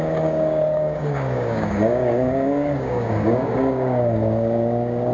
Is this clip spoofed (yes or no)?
yes